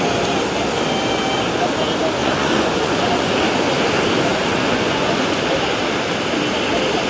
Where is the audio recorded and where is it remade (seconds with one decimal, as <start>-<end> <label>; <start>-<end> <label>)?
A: 0.0-2.2 recorded; 2.2-3.3 remade; 3.3-4.3 recorded; 4.3-5.4 remade; 5.4-7.1 recorded